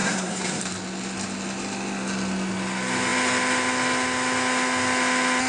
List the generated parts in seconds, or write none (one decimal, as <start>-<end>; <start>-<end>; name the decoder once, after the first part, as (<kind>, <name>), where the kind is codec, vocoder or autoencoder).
0.0-0.6 (codec, SNAC)